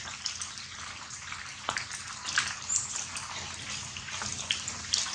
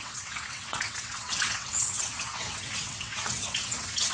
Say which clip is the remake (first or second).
second